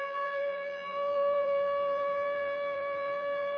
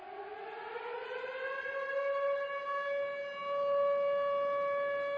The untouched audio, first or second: second